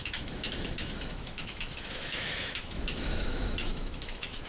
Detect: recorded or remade remade